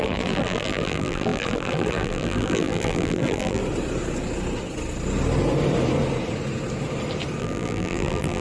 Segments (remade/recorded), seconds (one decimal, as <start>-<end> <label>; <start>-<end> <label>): 0.0-3.6 remade; 3.6-7.4 recorded; 7.4-8.4 remade